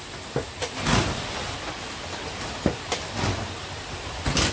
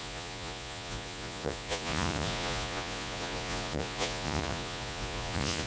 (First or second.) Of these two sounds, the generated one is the second